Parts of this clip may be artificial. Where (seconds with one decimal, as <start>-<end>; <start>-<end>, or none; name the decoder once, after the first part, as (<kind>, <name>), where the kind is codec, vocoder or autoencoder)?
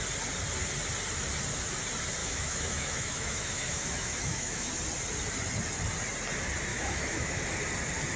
2.2-4.7 (autoencoder, DAC-VAE); 6.7-7.4